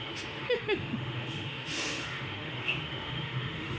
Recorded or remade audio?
remade